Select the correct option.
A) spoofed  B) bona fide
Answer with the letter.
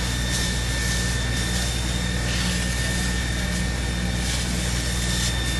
B